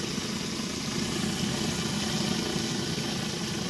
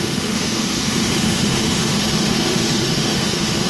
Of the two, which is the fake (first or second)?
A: second